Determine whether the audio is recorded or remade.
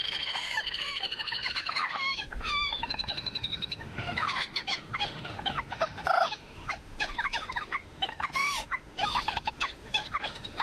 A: remade